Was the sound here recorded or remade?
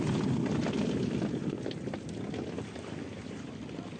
recorded